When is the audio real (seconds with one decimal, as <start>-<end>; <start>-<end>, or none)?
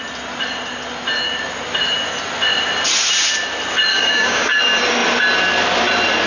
0.0-3.9; 4.6-6.3